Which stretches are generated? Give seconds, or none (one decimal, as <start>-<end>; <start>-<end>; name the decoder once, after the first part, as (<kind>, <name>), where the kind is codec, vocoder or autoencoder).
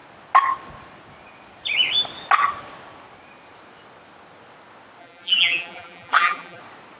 5.0-6.6 (vocoder, BigVGAN v2)